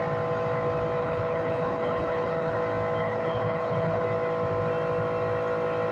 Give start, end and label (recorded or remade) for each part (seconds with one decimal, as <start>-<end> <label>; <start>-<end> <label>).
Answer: 0.0-1.0 recorded; 1.0-2.6 remade; 2.6-3.0 recorded; 3.0-4.0 remade; 4.0-5.9 recorded